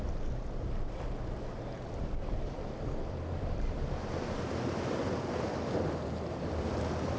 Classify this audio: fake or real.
fake